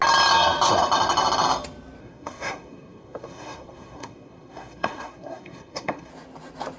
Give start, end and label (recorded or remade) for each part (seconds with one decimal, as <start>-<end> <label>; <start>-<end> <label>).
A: 0.0-2.0 recorded; 2.0-6.1 remade; 6.1-6.8 recorded